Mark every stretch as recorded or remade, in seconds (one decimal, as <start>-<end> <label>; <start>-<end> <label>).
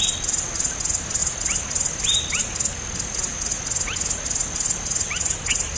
0.0-5.8 recorded